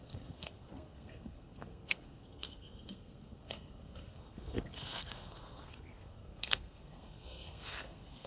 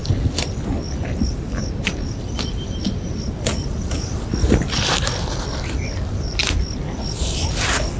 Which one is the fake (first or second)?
first